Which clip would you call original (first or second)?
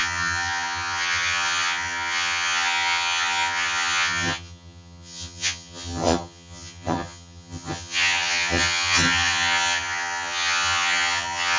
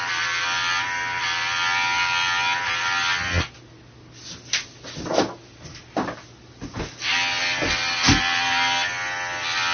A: second